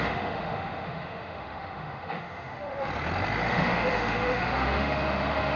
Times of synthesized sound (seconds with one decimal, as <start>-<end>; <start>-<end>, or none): 0.0-2.9; 3.5-5.6

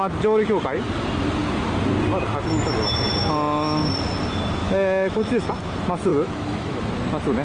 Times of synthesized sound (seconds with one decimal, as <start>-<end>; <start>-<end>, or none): 4.6-5.5; 6.1-6.8

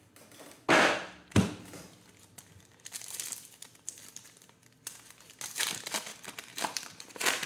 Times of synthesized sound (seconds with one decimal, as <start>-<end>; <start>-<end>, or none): 6.1-7.5